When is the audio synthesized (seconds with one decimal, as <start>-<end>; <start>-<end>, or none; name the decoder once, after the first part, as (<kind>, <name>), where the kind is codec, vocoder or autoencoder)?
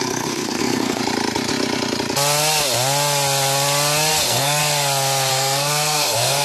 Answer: 0.0-1.0 (codec, SNAC); 4.1-4.6; 5.3-6.4